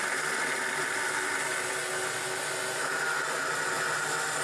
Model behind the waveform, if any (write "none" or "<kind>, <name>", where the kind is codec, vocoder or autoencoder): none